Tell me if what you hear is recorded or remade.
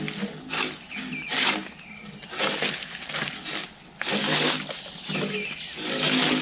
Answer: recorded